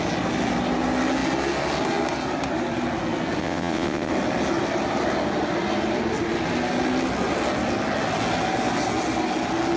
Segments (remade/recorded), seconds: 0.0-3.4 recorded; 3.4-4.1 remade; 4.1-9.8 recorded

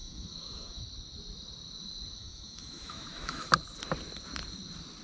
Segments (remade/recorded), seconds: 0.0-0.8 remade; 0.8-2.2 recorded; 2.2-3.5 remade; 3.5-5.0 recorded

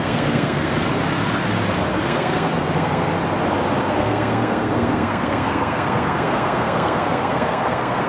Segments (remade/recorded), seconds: 0.0-0.7 remade; 0.7-1.9 recorded; 1.9-3.1 remade; 3.1-3.8 recorded; 3.8-8.1 remade

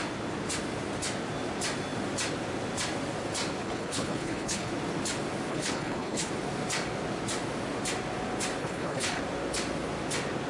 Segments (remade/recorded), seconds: 0.0-3.6 recorded; 3.6-4.7 remade; 4.7-5.5 recorded; 5.5-6.3 remade; 6.3-8.6 recorded; 8.6-9.2 remade; 9.2-10.5 recorded